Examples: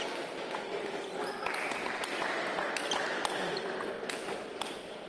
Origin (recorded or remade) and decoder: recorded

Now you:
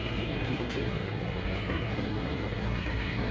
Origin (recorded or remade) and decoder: remade, codec, SNAC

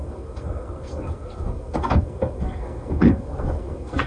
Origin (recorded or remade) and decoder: remade, codec, SNAC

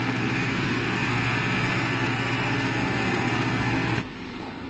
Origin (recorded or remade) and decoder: remade, codec, SNAC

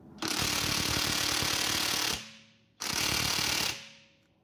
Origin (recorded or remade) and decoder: recorded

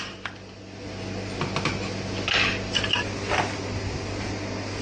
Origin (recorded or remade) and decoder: recorded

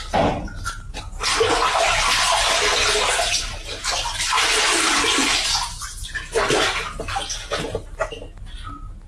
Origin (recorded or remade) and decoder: recorded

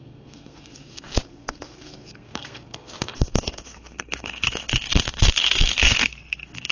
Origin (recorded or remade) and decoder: remade, codec, SNAC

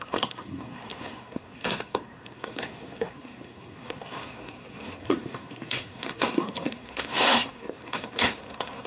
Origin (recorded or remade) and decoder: remade, codec, SNAC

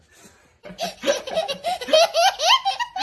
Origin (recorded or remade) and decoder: recorded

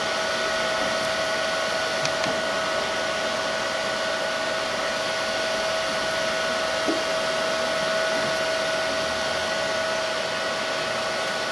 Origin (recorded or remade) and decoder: recorded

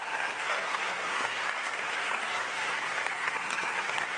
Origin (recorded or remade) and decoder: remade, codec, SNAC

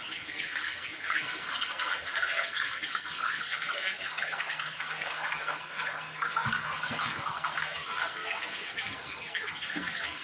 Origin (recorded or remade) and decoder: remade, codec, SNAC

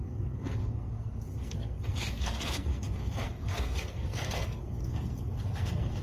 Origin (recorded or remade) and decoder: remade, codec, SNAC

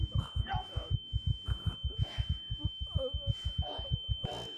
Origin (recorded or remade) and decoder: recorded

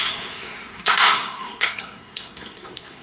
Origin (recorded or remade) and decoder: remade, codec, SNAC